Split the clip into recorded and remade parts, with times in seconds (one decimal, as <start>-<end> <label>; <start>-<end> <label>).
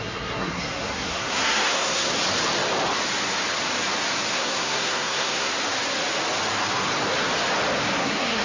0.0-2.1 remade; 2.1-4.3 recorded; 4.3-5.5 remade; 5.5-8.0 recorded; 8.0-8.4 remade